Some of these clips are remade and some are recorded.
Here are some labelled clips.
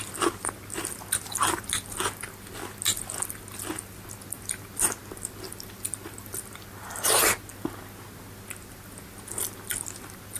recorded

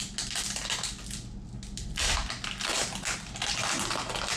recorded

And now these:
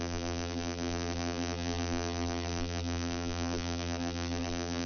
remade